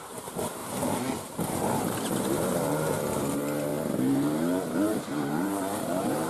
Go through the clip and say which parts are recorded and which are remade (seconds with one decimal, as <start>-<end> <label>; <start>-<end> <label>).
0.0-6.3 remade